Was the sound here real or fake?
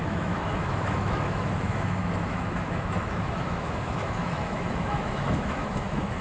fake